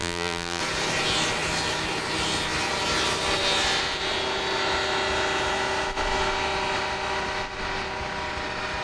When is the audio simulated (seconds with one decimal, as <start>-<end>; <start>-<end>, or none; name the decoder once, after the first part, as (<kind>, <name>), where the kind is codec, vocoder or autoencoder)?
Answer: 0.0-0.6 (vocoder, BigVGAN v2)